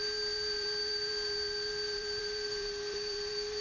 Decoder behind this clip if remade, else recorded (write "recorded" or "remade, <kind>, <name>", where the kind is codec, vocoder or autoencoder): remade, vocoder, BigVGAN v2